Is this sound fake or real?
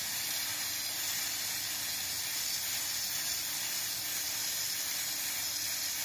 real